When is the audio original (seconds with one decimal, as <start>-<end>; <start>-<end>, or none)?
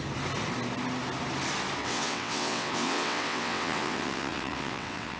0.0-1.8